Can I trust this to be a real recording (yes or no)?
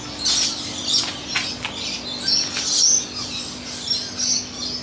yes